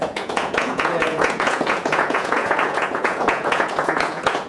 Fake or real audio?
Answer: fake